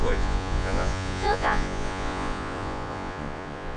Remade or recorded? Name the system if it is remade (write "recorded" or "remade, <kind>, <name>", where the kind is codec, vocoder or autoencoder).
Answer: remade, vocoder, Vocos